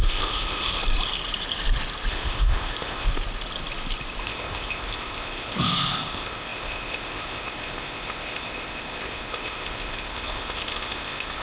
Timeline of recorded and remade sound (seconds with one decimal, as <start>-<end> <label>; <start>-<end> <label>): 0.0-0.8 remade; 0.8-2.1 recorded; 2.1-3.1 remade; 3.1-4.2 recorded; 4.2-11.4 remade